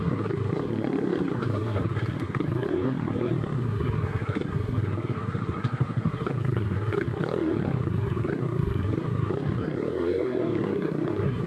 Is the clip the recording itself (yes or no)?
no